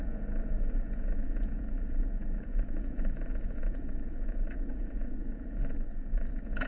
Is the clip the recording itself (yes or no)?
no